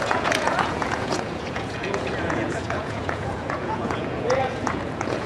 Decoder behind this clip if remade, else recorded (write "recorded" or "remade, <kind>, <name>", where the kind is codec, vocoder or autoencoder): remade, vocoder, Vocos